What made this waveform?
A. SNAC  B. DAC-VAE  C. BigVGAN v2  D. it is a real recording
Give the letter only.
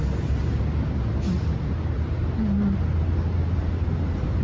D